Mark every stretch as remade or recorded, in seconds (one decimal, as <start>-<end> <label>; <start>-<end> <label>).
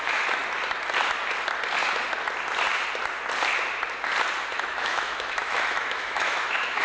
0.0-0.4 remade; 0.4-4.5 recorded; 4.5-6.8 remade